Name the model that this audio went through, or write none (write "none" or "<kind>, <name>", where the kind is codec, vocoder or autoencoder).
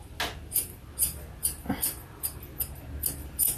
none